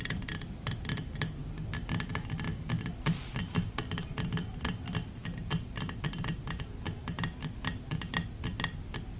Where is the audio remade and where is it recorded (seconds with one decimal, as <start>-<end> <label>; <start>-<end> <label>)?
0.0-9.2 recorded